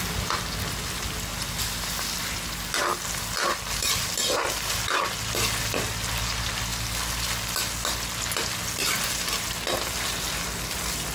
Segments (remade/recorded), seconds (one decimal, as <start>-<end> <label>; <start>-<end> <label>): 0.0-11.1 recorded